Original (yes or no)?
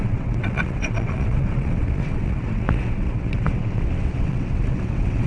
no